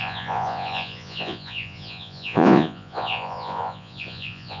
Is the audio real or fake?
fake